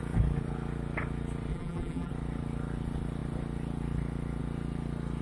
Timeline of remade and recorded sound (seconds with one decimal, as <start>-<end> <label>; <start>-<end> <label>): 0.0-1.5 recorded; 1.5-2.1 remade; 2.1-5.2 recorded